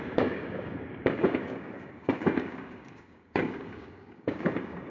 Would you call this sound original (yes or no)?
no